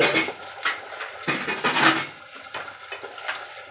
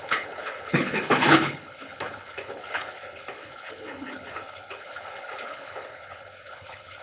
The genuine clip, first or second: first